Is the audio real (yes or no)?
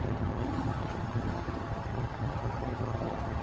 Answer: no